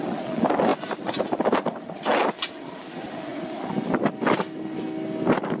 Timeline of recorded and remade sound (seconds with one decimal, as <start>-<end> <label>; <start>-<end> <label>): 0.0-5.6 recorded